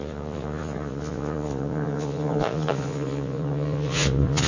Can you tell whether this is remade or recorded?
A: remade